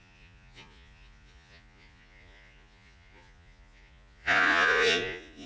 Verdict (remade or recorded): remade